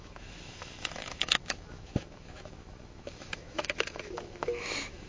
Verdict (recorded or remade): remade